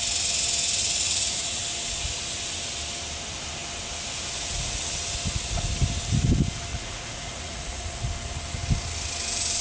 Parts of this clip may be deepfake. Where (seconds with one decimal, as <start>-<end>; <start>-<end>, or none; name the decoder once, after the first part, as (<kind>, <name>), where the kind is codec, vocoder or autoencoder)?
0.8-1.6 (vocoder, Vocos); 6.7-8.0